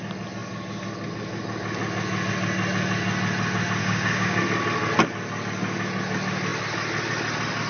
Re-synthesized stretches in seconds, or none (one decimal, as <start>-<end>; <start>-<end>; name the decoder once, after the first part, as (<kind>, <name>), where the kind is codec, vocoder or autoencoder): 3.8-4.4 (codec, DAC)